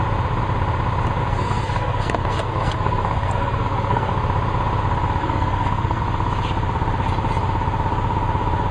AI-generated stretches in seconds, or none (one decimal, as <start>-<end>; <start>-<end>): 1.2-4.1; 5.2-6.0